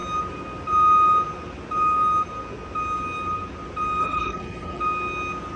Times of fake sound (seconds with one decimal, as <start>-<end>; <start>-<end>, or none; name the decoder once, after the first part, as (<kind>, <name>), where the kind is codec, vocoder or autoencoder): 4.0-4.8 (codec, HILCodec)